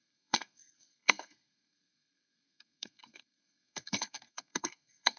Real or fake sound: fake